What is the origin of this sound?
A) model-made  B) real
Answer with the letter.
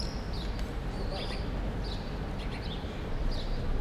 B